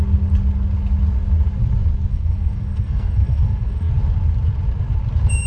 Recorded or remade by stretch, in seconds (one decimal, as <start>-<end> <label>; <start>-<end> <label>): 0.0-2.1 recorded; 2.1-3.9 remade; 3.9-5.5 recorded